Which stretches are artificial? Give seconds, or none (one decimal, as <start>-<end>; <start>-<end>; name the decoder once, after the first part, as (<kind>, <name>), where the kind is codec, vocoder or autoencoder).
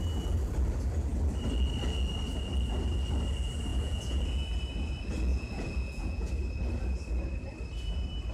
3.7-4.2 (vocoder, Vocos); 5.3-6.3